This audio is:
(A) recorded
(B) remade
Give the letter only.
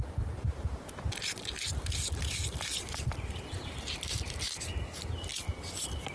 A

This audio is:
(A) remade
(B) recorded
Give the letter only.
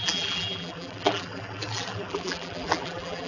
A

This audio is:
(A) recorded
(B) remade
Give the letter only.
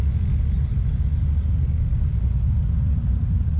A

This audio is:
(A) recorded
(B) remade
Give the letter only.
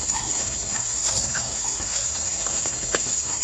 B